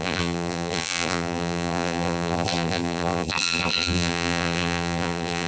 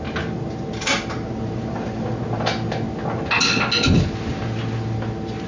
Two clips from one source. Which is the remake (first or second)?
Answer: first